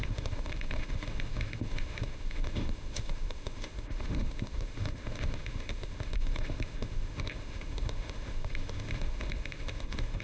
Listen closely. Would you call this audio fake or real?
fake